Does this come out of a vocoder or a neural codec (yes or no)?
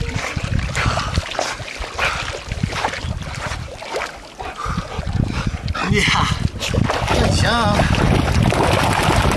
no